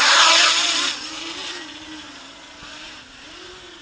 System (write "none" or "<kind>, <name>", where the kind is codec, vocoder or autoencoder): vocoder, BigVGAN v2